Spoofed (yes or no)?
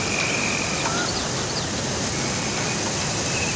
no